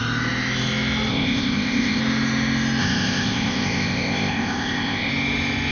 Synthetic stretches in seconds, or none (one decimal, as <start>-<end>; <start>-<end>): 1.1-2.0; 2.8-5.1

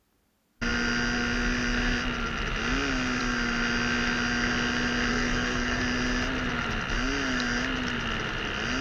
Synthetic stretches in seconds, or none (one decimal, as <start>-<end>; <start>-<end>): 5.1-5.8